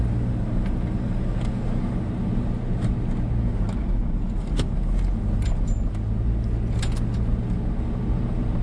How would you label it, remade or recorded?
recorded